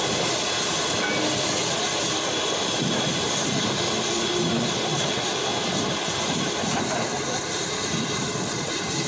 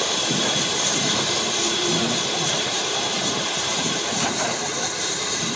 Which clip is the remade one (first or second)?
second